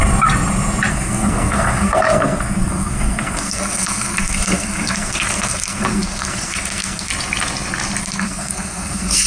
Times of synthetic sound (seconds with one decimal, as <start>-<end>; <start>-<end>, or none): 0.9-7.1; 8.0-9.3